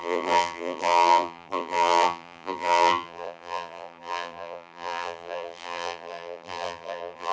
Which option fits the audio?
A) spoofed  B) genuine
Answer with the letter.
A